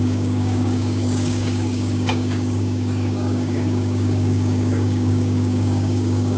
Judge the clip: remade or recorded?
remade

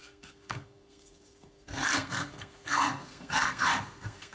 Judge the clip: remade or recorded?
remade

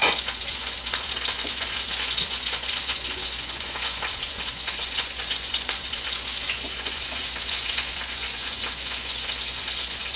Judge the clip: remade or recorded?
remade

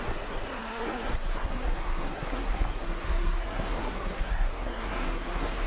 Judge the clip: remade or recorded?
remade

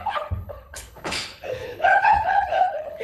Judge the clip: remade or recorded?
remade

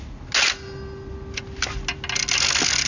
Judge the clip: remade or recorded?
recorded